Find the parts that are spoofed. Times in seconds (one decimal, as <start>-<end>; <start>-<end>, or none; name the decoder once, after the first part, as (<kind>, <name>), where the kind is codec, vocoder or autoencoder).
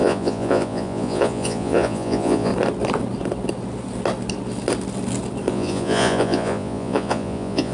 0.0-2.5 (vocoder, Vocos); 5.5-7.7